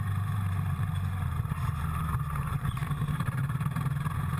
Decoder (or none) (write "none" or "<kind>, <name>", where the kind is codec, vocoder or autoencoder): vocoder, BigVGAN v2